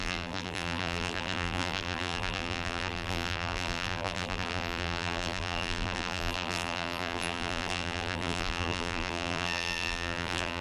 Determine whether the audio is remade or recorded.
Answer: remade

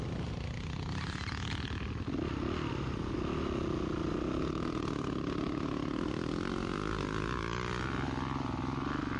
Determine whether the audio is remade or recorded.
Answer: recorded